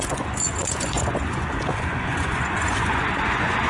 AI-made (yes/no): yes